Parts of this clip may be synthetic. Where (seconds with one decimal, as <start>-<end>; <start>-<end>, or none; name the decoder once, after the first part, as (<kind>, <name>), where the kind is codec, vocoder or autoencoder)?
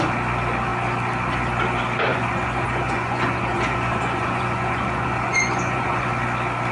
2.1-6.1 (vocoder, Vocos)